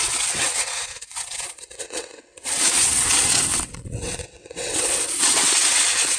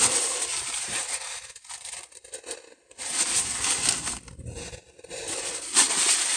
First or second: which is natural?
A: second